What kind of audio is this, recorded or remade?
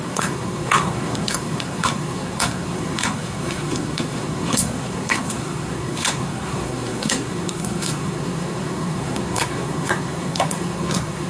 remade